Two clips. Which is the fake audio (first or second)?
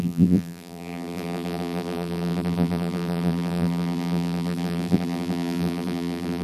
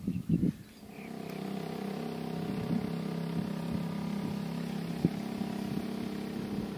first